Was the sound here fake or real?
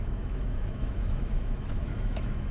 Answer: fake